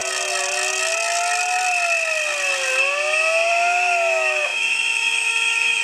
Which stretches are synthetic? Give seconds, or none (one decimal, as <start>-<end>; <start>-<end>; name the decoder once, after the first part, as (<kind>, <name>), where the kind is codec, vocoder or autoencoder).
3.5-5.8 (autoencoder, DAC-VAE)